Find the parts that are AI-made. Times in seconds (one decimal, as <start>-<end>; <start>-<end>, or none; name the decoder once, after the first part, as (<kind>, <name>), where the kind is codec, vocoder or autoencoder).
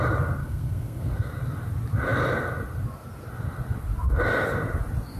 0.4-1.3 (codec, SNAC)